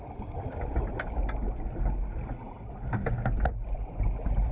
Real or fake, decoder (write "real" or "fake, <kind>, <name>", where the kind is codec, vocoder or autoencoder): real